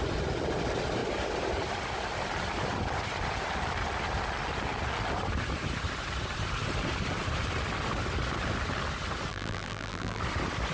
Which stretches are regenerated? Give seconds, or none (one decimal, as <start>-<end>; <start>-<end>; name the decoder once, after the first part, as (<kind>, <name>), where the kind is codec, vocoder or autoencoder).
9.3-10.2 (vocoder, BigVGAN v2)